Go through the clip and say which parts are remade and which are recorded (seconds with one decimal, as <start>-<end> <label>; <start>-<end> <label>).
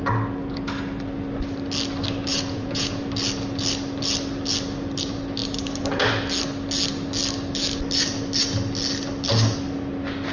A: 0.0-2.3 recorded; 2.3-3.0 remade; 3.0-10.3 recorded